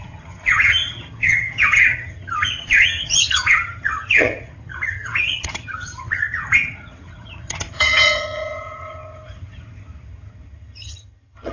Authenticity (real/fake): fake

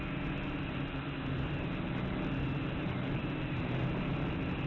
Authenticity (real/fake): real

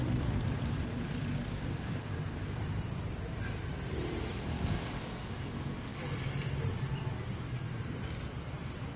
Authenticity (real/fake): fake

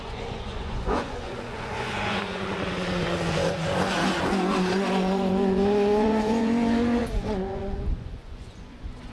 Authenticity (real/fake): fake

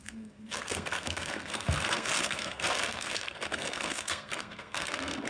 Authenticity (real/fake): fake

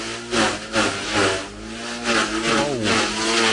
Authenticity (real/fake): real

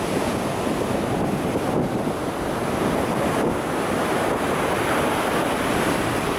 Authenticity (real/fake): real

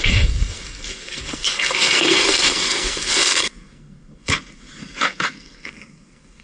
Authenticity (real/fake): fake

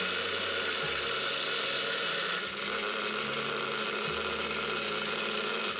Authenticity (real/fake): real